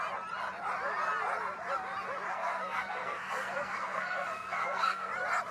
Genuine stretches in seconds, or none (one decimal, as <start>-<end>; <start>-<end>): 0.0-2.3; 5.1-5.5